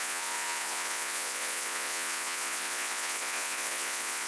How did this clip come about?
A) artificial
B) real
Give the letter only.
A